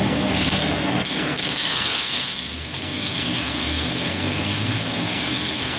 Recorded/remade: remade